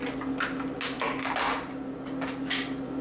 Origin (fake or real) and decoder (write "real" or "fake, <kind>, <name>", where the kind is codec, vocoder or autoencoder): real